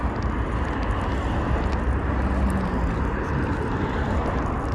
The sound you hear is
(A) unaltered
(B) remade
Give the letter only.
A